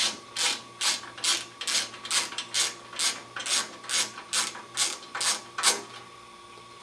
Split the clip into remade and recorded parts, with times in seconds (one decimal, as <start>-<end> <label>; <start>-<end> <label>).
0.0-6.8 recorded